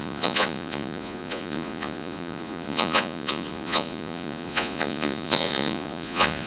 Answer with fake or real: fake